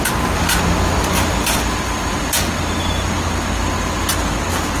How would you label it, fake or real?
real